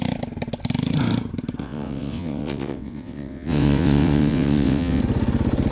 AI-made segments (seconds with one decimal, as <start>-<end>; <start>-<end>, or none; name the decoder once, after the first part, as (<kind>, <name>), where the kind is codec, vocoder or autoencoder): 1.6-5.0 (vocoder, WaveNeXt)